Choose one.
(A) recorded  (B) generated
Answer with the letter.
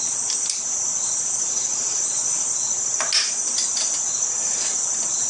A